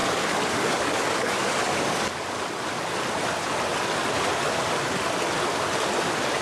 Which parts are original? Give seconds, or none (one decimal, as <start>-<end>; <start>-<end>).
2.4-6.4